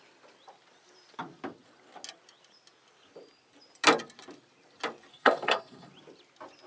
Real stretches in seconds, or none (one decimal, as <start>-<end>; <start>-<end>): 0.0-5.1; 5.9-6.7